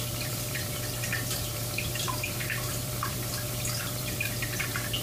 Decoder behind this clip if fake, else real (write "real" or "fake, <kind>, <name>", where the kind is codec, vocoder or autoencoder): fake, vocoder, BigVGAN v2